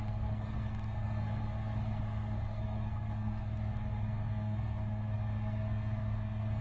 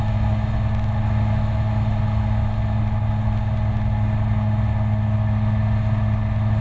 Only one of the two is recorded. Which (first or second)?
second